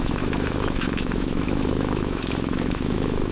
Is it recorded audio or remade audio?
remade